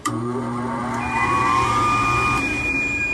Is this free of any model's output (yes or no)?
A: no